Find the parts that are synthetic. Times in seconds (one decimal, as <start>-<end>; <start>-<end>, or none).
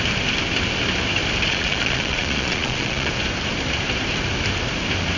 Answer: 1.5-3.1